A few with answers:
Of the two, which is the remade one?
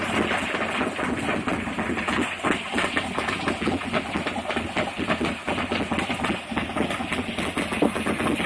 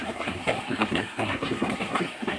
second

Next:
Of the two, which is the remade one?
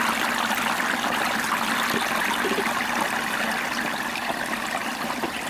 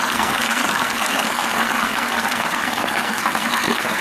second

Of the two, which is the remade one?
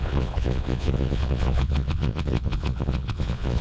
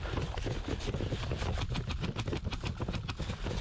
first